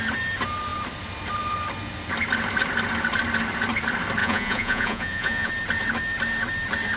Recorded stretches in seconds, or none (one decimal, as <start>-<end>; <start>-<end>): 0.0-4.2; 5.5-7.0